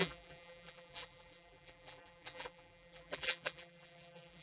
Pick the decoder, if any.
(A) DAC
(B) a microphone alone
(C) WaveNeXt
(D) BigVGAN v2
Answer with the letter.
D